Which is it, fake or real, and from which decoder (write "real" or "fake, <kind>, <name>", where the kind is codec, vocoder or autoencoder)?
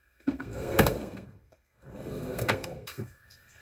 fake, codec, SNAC